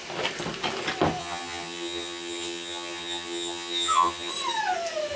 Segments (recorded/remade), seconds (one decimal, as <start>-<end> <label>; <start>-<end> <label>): 0.0-1.2 recorded; 1.2-4.3 remade; 4.3-5.2 recorded